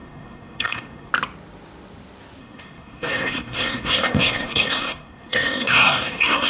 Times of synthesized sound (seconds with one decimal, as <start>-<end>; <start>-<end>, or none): 0.0-1.1; 2.4-6.5